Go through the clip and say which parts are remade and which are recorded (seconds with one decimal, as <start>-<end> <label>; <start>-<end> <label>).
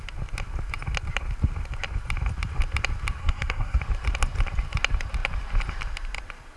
0.0-3.2 recorded; 3.2-3.8 remade; 3.8-6.6 recorded